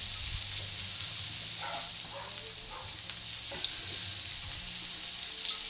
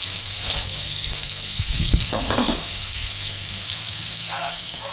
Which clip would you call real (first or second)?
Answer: first